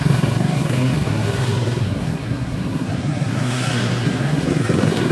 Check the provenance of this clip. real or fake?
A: fake